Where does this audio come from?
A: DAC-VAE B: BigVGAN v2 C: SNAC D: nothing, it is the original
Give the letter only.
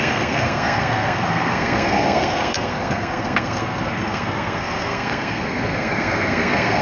C